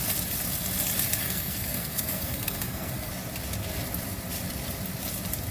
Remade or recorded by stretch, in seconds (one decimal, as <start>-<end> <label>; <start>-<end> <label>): 0.0-1.2 recorded; 1.2-3.1 remade; 3.1-5.5 recorded